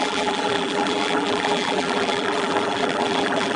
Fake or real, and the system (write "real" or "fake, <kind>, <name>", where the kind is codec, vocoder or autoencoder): fake, vocoder, BigVGAN v2